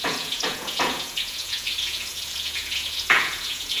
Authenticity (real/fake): fake